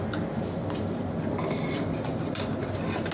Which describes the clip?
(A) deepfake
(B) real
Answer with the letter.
B